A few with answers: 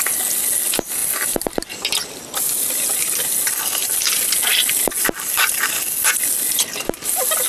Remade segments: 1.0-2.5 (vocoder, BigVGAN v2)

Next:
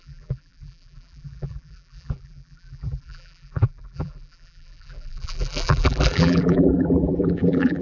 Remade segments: 0.0-7.8 (vocoder, BigVGAN v2)

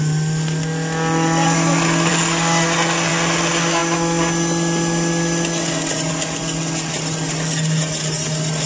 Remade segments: none

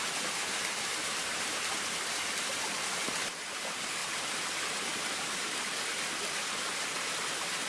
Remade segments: 0.0-5.9 (vocoder, BigVGAN v2); 6.6-7.7

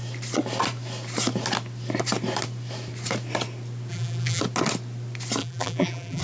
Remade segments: 3.9-4.4 (vocoder, BigVGAN v2); 5.4-6.2